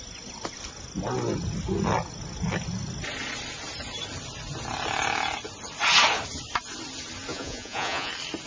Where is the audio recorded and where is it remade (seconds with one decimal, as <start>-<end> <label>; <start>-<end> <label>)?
0.0-7.3 recorded; 7.3-8.1 remade; 8.1-8.5 recorded